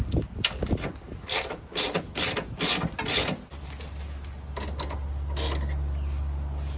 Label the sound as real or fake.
real